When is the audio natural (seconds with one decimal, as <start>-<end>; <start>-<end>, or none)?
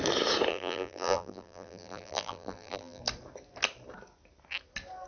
0.0-0.5; 3.0-5.1